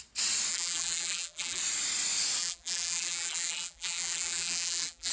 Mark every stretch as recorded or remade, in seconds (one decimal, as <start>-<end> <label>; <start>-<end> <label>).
0.0-0.5 recorded; 0.5-1.6 remade; 1.6-2.4 recorded; 2.4-5.1 remade